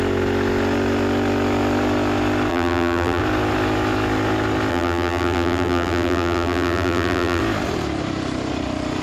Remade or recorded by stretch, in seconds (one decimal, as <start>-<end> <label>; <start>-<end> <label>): 0.0-2.5 recorded; 2.5-3.2 remade; 3.2-4.7 recorded; 4.7-7.4 remade; 7.4-9.0 recorded